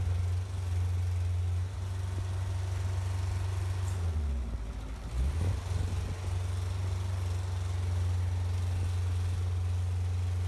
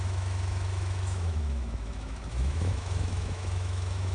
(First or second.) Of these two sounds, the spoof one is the second